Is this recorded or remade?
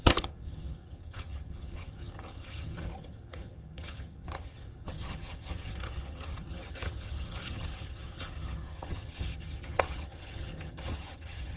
remade